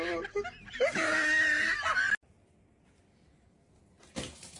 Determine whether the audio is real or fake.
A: real